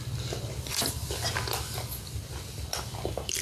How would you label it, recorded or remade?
recorded